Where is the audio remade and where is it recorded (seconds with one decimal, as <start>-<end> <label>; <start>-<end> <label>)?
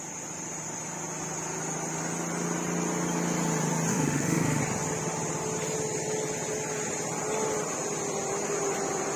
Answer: 0.0-3.9 recorded; 3.9-4.6 remade; 4.6-9.2 recorded